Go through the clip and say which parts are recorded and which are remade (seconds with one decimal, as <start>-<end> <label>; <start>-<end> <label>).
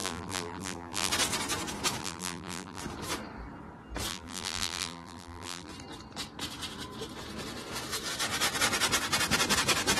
0.0-1.1 remade; 1.1-2.0 recorded; 2.0-2.8 remade; 2.8-4.1 recorded; 4.1-5.7 remade; 5.7-10.0 recorded